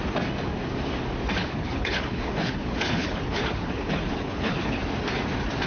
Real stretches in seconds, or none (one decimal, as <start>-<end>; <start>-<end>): 0.0-1.4; 4.8-5.7